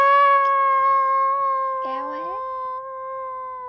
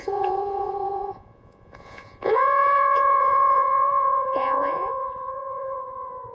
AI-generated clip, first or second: second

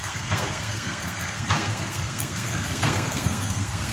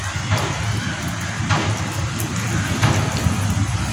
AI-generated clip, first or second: first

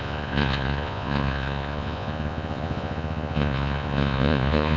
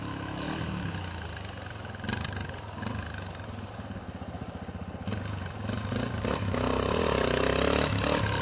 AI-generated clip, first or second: first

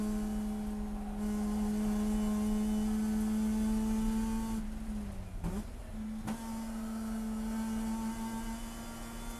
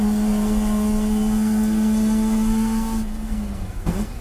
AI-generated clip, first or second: second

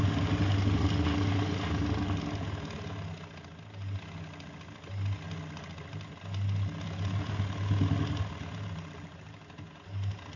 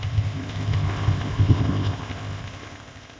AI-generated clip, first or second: second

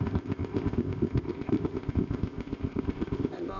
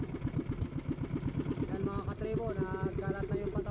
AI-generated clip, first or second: first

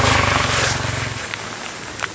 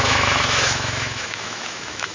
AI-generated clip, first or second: second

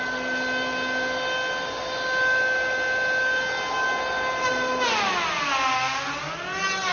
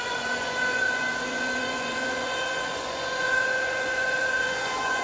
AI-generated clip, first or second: second